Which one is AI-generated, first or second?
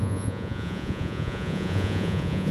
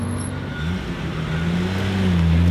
first